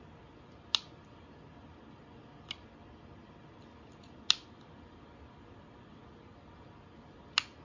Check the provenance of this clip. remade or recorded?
recorded